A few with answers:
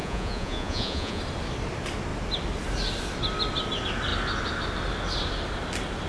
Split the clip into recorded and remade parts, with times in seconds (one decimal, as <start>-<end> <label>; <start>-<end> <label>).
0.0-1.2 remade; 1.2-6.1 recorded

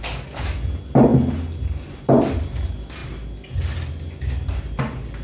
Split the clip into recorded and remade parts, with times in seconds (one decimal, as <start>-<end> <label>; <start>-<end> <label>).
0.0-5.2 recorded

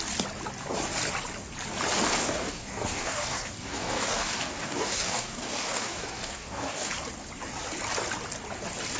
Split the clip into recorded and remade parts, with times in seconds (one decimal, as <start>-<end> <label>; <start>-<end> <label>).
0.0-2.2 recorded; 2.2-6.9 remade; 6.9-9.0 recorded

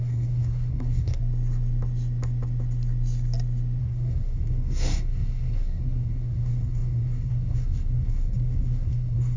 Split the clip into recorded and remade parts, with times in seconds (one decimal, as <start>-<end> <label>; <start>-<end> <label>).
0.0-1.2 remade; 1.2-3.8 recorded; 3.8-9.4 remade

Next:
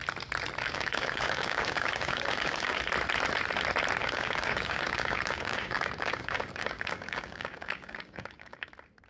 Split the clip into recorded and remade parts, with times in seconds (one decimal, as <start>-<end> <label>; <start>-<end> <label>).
0.0-0.6 recorded; 0.6-2.8 remade; 2.8-4.0 recorded; 4.0-8.7 remade; 8.7-9.1 recorded